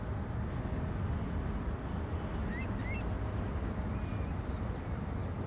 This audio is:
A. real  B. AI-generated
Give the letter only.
A